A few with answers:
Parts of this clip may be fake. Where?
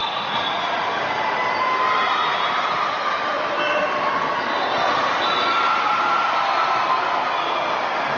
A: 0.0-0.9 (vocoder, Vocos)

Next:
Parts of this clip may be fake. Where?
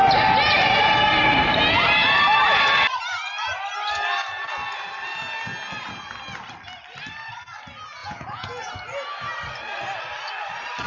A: 8.0-8.7 (vocoder, Vocos)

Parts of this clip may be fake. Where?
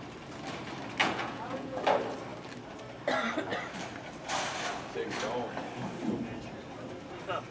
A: 1.0-1.8 (vocoder, Vocos)